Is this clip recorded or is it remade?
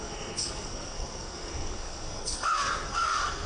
remade